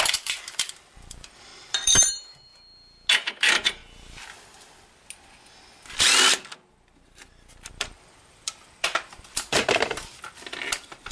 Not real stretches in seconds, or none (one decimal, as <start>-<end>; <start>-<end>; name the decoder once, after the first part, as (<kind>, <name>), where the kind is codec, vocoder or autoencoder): 0.0-2.5 (vocoder, BigVGAN v2); 3.3-3.8; 7.7-11.1

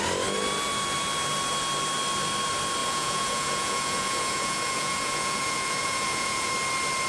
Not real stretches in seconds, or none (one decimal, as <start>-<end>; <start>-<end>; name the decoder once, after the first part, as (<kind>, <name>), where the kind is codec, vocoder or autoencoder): 2.8-6.5 (vocoder, Vocos)